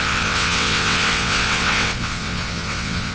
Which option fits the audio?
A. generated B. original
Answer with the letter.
A